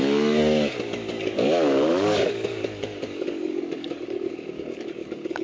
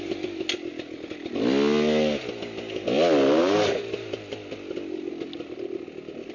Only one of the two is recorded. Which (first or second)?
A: second